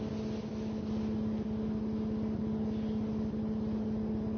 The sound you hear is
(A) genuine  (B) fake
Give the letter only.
A